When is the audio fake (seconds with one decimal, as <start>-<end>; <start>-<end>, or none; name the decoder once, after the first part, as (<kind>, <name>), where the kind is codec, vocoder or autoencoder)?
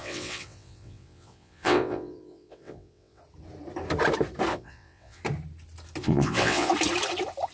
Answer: 0.0-3.2 (vocoder, WaveNeXt); 4.5-5.2; 6.0-6.7